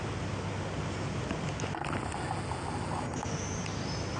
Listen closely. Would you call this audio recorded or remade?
recorded